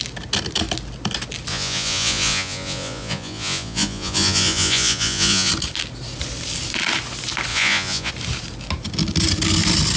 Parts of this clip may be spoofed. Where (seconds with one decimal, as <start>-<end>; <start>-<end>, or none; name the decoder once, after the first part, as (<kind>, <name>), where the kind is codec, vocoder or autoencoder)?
1.5-5.5 (vocoder, Vocos); 7.5-8.1